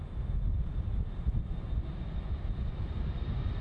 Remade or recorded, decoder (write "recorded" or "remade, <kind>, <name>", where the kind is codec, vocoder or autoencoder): recorded